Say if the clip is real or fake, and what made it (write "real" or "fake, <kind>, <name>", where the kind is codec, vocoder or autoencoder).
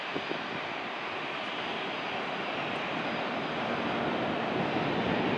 real